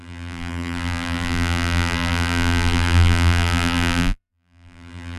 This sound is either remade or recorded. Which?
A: remade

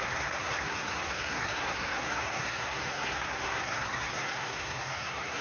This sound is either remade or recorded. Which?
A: remade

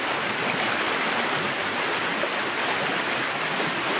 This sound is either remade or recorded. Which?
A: recorded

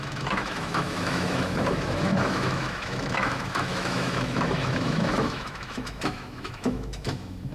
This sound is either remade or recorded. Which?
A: remade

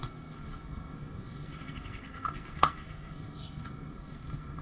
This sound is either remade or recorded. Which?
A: remade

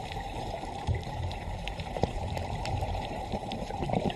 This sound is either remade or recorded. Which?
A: remade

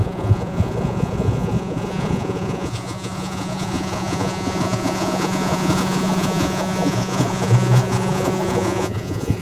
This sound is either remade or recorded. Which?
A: remade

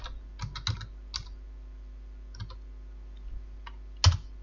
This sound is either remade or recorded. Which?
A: recorded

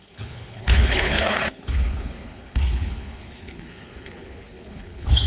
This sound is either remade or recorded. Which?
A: remade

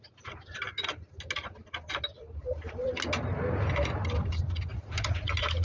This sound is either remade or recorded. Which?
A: recorded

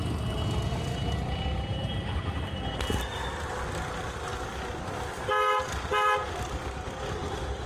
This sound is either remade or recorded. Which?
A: recorded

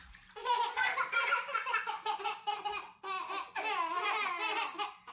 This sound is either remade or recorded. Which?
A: recorded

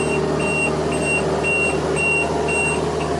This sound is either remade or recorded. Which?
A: recorded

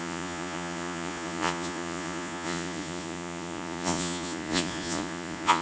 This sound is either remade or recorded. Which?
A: remade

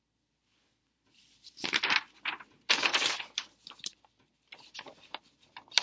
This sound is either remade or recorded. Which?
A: remade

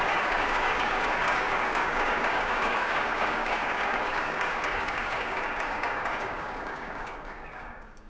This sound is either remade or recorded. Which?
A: remade